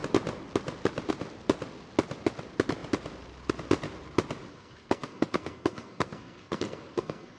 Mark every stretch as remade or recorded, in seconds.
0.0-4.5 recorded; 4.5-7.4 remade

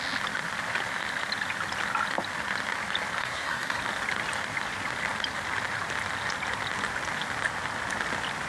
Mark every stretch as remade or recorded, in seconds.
0.0-3.2 recorded; 3.2-3.8 remade; 3.8-8.5 recorded

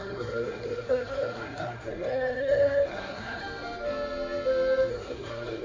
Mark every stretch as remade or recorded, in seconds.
0.0-3.4 remade; 3.4-4.9 recorded; 4.9-5.6 remade

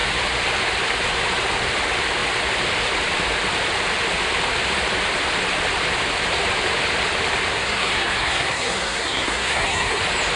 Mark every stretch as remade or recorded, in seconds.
0.0-7.5 recorded; 7.5-10.0 remade; 10.0-10.4 recorded

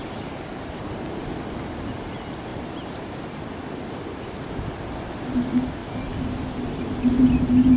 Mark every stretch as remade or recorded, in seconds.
0.0-7.8 recorded

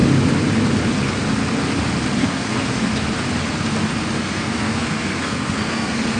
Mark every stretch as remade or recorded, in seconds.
0.0-2.2 recorded; 2.2-2.9 remade; 2.9-4.2 recorded; 4.2-6.2 remade

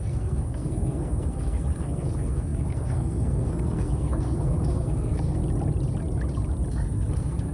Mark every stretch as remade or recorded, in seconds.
0.0-5.4 remade; 5.4-6.7 recorded; 6.7-7.5 remade

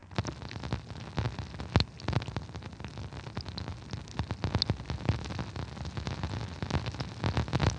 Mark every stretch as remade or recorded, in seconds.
0.0-7.8 recorded